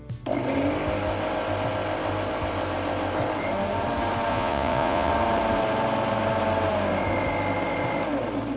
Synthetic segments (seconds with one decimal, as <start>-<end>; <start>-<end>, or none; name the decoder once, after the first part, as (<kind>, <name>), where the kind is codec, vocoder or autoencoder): 4.3-5.1 (vocoder, Vocos)